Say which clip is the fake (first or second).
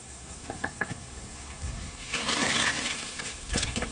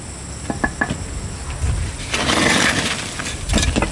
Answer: first